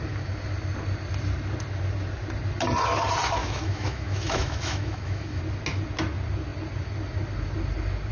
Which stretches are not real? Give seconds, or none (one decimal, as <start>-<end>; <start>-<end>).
3.4-5.4